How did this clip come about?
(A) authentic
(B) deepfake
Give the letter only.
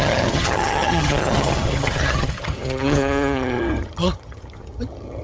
B